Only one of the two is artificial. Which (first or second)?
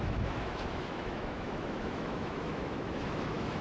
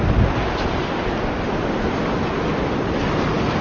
first